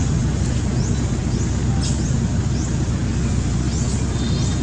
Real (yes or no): yes